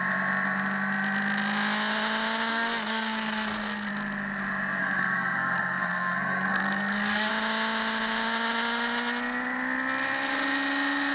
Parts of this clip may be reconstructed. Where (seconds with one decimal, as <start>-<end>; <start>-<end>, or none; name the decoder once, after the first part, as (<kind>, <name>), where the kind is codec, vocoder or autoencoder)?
2.5-3.9 (codec, SNAC); 4.8-7.3